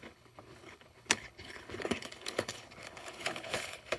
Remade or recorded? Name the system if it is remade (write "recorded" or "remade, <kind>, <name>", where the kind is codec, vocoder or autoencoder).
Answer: remade, codec, HILCodec